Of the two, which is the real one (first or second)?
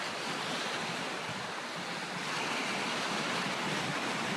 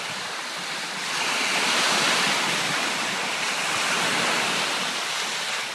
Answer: first